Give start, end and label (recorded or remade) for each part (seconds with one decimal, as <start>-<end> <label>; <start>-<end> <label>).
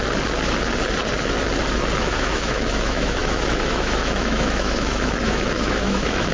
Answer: 0.0-2.0 recorded; 2.0-6.3 remade